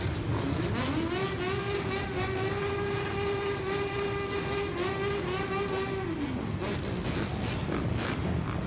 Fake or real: real